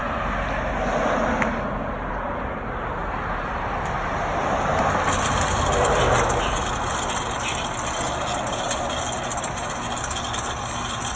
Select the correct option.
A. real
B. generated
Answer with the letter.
A